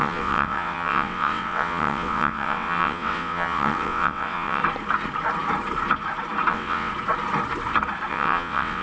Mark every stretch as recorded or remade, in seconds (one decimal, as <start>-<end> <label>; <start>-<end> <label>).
0.0-4.6 remade; 4.6-6.5 recorded; 6.5-6.9 remade; 6.9-8.1 recorded; 8.1-8.8 remade